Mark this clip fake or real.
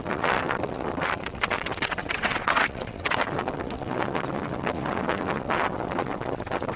fake